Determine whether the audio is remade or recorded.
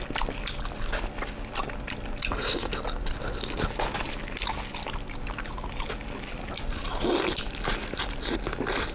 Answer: recorded